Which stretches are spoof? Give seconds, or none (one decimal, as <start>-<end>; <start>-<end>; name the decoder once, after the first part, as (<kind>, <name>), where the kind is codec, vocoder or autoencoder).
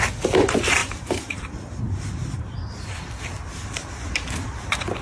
0.8-2.4 (vocoder, BigVGAN v2)